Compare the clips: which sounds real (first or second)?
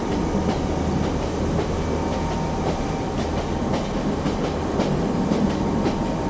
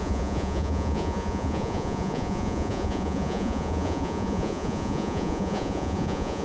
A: first